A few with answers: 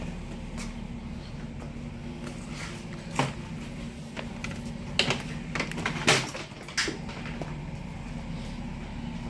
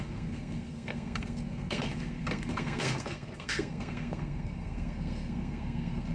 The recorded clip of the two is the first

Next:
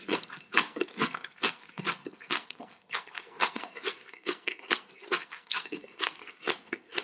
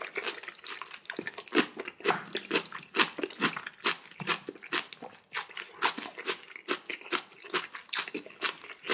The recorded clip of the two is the second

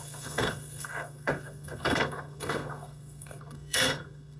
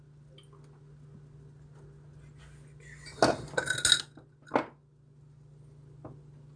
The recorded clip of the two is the second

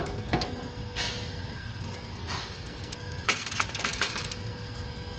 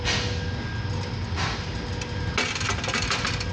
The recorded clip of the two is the second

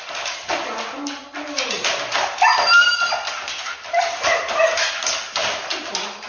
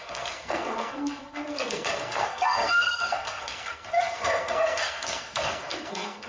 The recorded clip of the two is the first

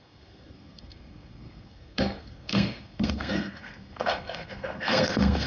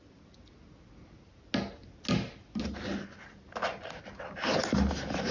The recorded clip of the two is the second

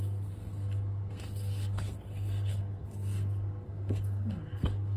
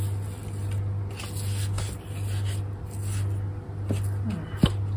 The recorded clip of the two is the second